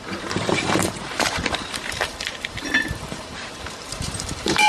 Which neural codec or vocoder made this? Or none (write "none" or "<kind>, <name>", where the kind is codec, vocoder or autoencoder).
vocoder, BigVGAN v2